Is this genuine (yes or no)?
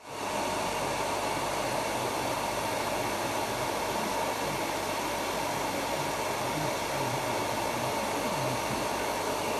yes